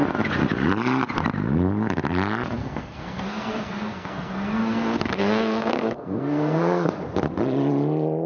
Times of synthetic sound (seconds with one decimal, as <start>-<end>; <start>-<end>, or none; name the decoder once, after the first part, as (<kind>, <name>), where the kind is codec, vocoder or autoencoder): 2.6-6.9 (codec, SNAC)